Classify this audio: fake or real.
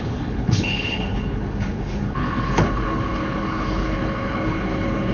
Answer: fake